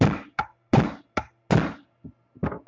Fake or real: real